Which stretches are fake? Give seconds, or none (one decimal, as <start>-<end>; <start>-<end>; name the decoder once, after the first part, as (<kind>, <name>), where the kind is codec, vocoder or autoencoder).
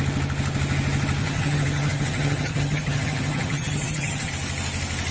1.2-4.3 (vocoder, HiFi-GAN)